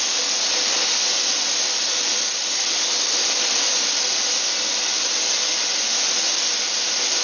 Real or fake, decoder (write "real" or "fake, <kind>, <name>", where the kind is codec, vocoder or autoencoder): real